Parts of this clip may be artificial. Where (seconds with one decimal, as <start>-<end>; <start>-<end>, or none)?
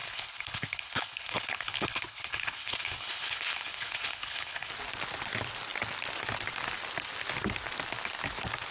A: 0.0-4.7